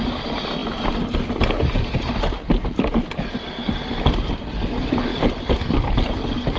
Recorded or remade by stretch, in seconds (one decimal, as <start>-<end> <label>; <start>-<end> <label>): 0.0-6.6 recorded